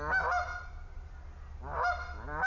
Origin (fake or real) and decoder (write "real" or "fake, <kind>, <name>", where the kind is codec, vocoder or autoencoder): real